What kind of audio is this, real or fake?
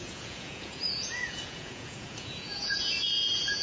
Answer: fake